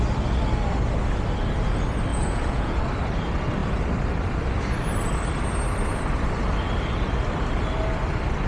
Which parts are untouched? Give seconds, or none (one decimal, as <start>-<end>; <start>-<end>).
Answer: 0.0-2.1; 2.8-8.5